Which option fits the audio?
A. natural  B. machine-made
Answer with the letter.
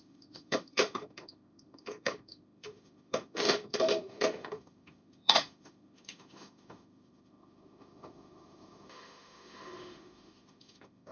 B